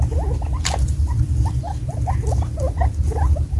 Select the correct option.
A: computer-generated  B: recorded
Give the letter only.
A